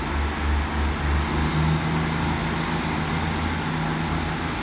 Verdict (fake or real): real